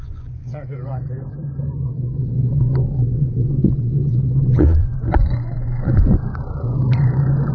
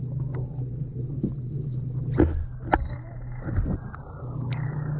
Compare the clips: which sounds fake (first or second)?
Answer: first